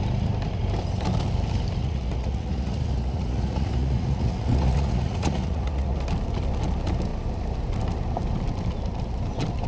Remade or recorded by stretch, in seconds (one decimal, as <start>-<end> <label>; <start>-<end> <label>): 0.0-1.8 recorded; 1.8-6.0 remade; 6.0-9.7 recorded